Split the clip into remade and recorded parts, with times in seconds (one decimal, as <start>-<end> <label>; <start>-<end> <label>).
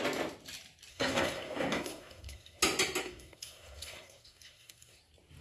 0.0-0.9 recorded; 0.9-2.6 remade; 2.6-3.0 recorded; 3.0-5.0 remade; 5.0-5.4 recorded